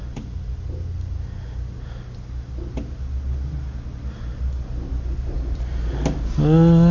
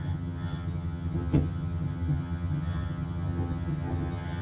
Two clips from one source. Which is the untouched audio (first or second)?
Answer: first